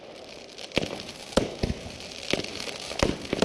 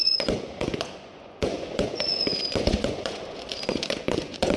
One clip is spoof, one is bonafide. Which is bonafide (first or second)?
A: first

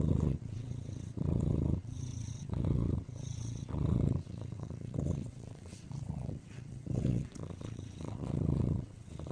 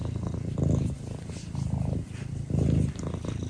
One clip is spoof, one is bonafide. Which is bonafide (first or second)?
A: second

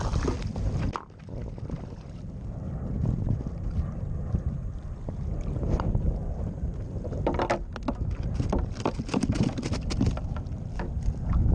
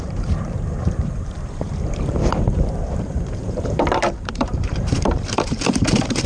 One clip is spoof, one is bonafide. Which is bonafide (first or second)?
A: first